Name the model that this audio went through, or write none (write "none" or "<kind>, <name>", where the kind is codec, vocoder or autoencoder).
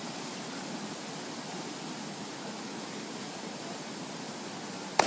none